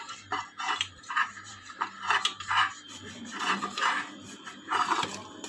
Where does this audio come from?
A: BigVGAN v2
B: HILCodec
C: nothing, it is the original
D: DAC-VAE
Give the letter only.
A